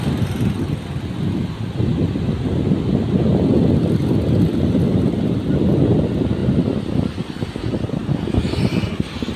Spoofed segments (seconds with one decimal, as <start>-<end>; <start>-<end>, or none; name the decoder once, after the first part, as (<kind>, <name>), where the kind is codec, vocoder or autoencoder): none

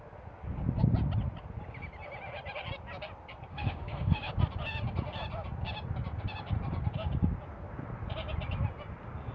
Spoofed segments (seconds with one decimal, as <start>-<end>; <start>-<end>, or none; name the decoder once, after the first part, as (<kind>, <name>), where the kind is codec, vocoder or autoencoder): 3.5-4.3 (autoencoder, DAC-VAE)

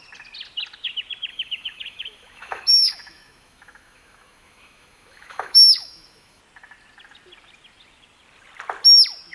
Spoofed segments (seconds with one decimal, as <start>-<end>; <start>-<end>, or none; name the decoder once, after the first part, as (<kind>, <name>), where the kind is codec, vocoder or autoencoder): 1.3-6.4 (autoencoder, DAC-VAE)

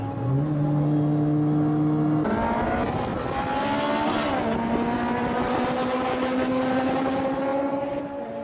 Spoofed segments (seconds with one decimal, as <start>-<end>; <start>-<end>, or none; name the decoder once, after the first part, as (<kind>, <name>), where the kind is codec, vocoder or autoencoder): none

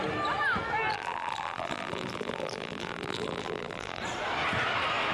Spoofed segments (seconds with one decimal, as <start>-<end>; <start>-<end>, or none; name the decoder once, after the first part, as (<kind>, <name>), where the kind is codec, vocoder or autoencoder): 0.9-4.0 (vocoder, BigVGAN v2)

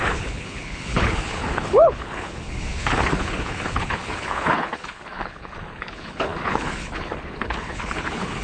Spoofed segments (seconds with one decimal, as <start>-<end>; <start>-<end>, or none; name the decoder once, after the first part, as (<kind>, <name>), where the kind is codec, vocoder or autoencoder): 0.0-8.4 (codec, HILCodec)